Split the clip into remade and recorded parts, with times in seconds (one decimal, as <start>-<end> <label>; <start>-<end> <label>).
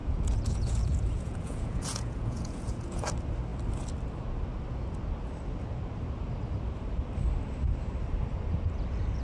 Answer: 0.0-3.0 remade; 3.0-9.2 recorded